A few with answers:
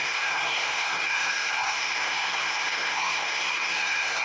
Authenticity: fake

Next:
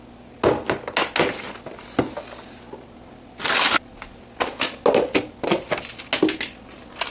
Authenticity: real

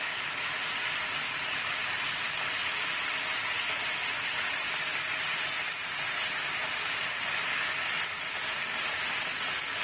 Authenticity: real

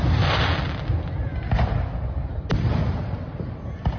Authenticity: real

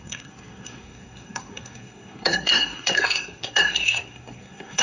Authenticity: fake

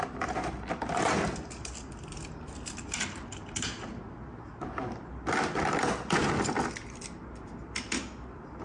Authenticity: real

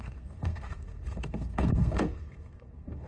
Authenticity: fake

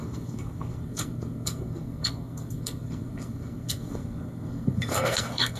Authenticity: fake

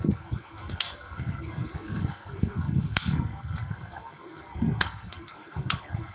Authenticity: fake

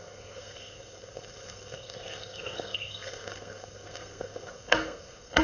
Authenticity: fake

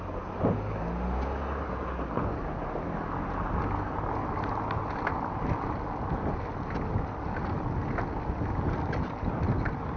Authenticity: real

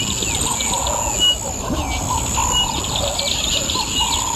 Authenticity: real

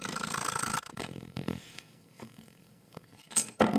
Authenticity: fake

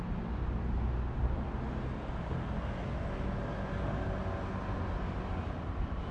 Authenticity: real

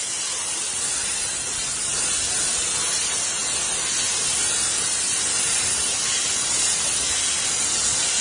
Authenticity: real